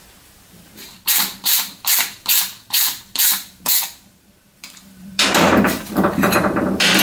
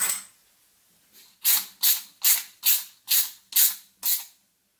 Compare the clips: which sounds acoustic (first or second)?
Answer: second